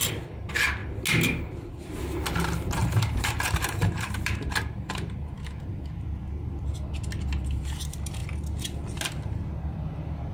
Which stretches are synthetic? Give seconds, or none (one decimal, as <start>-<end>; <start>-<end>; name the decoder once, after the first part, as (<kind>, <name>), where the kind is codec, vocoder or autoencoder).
2.8-5.7 (vocoder, BigVGAN v2)